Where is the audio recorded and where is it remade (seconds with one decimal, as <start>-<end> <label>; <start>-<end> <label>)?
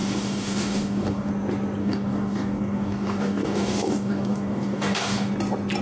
0.0-1.3 remade; 1.3-1.8 recorded; 1.8-5.3 remade; 5.3-5.8 recorded